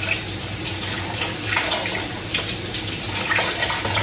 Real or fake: real